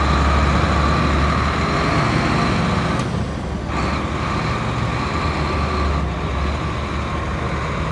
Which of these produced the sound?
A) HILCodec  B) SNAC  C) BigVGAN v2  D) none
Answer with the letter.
D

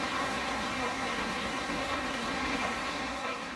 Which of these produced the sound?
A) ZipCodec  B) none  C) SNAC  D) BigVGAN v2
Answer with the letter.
C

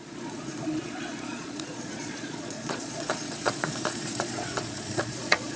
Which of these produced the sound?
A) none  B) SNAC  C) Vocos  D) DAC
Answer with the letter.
C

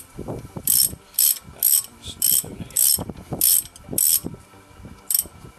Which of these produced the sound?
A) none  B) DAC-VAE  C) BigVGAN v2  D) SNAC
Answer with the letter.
C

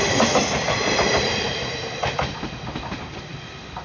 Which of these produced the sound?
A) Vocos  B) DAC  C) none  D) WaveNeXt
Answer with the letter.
C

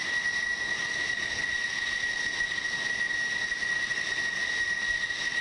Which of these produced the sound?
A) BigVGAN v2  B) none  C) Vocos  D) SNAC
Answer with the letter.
B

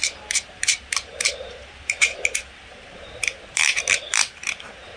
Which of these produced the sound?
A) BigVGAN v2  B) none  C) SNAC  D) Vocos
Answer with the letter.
A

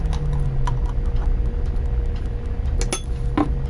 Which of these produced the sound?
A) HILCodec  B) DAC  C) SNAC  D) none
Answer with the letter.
D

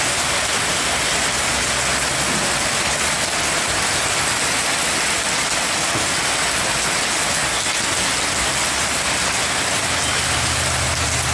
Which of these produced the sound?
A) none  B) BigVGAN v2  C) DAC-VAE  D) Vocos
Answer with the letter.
A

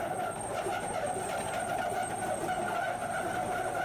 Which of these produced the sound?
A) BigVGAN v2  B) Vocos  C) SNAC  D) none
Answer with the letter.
D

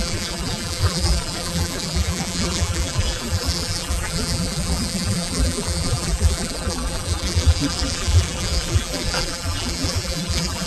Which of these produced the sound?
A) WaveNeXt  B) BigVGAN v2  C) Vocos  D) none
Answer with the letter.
B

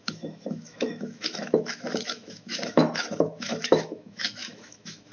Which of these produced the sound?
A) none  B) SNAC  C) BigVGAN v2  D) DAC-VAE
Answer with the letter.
D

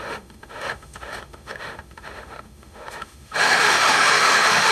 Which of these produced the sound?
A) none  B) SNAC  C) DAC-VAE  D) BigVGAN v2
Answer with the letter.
C